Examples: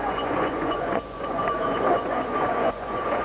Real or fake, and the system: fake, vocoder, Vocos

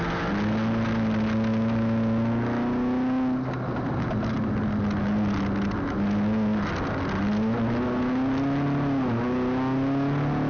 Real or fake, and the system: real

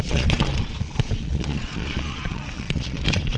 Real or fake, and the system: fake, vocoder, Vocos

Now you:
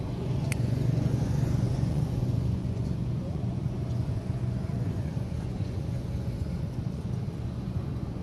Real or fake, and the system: fake, vocoder, Vocos